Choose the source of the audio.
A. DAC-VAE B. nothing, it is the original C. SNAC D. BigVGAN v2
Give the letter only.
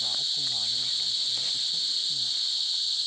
B